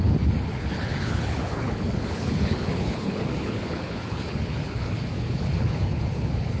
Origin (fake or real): fake